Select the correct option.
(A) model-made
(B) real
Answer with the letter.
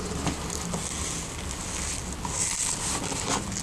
B